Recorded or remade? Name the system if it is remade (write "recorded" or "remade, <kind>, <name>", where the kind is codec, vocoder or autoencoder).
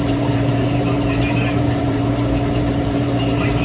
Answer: remade, vocoder, BigVGAN v2